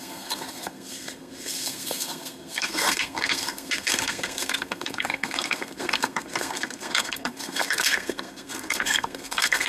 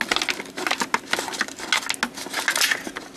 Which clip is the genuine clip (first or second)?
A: second